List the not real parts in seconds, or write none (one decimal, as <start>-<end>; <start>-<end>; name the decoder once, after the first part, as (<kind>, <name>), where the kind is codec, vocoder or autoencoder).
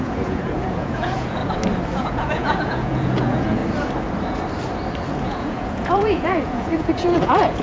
0.0-1.4 (vocoder, Vocos); 2.0-3.6; 5.2-7.6